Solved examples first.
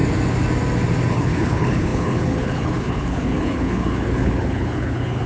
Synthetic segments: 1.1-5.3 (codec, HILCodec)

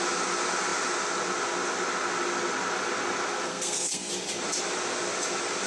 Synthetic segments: 3.5-4.1 (codec, SNAC)